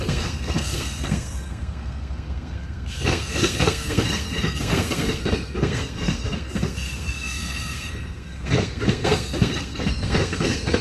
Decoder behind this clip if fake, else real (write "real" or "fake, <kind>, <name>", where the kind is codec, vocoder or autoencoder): fake, codec, SNAC